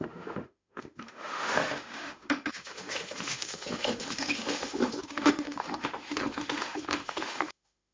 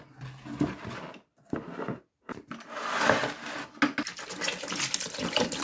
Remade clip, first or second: first